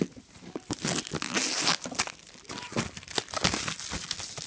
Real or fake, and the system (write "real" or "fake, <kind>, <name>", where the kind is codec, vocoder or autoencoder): real